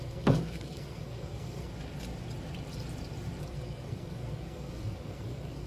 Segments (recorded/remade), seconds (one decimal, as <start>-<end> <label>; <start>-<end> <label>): 0.0-1.7 remade; 1.7-3.4 recorded; 3.4-5.7 remade